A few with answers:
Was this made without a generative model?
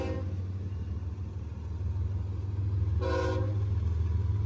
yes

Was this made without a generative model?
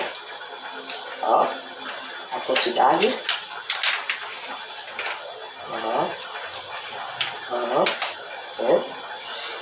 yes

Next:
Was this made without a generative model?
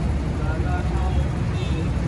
yes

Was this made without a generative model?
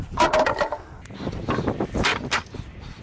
yes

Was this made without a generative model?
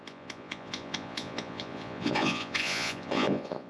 no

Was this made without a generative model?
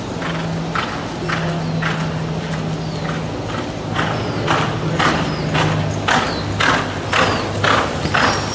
yes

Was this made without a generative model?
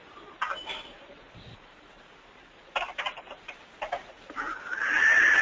yes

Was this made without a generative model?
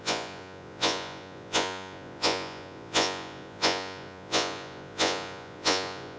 no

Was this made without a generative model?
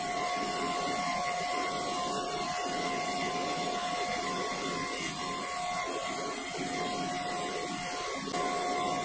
yes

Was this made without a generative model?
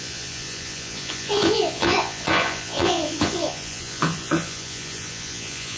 no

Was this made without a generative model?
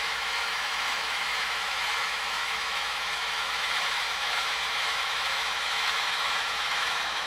no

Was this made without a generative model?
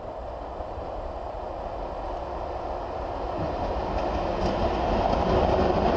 yes